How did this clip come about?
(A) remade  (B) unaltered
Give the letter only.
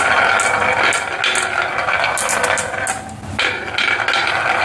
B